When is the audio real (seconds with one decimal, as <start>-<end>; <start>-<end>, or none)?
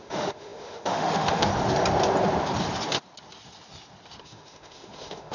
1.5-4.2